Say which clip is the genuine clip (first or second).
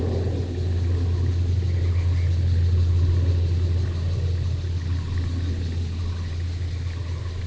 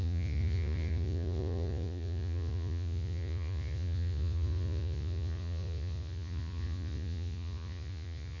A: first